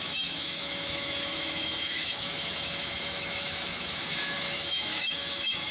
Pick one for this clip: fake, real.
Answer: fake